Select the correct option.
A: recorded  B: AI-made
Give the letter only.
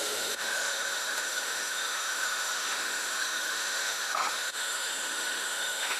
B